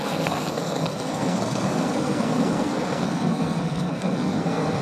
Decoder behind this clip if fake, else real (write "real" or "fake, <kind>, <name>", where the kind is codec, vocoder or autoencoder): fake, codec, SNAC